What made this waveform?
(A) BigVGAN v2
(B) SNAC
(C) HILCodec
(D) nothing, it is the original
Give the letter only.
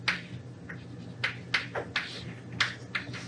D